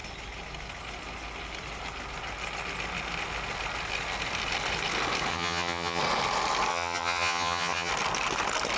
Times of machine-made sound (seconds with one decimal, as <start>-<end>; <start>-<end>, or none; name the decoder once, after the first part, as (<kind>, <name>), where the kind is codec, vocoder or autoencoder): 5.3-6.0 (vocoder, HiFi-GAN); 6.7-7.9